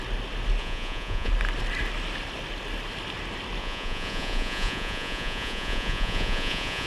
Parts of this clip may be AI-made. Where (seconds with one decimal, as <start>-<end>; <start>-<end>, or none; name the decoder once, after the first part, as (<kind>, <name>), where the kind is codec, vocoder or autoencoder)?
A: 0.6-1.3 (vocoder, Vocos); 3.6-6.9